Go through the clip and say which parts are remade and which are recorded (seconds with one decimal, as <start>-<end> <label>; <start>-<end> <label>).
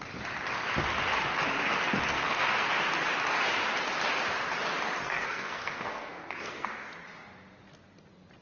0.0-2.1 recorded; 2.1-2.7 remade; 2.7-5.0 recorded; 5.0-6.9 remade; 6.9-8.4 recorded